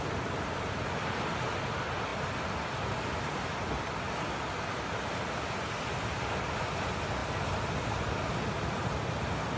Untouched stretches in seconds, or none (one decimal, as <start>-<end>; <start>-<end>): 0.0-9.6